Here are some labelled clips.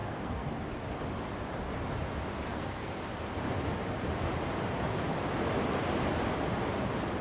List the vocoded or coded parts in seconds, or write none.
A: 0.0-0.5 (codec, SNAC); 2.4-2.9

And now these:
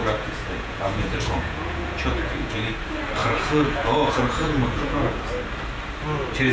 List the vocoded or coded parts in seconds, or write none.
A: 0.0-2.7 (vocoder, Vocos); 3.2-5.2

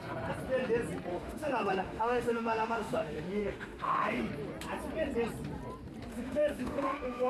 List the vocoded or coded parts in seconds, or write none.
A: 1.1-4.2 (autoencoder, DAC-VAE); 6.1-7.3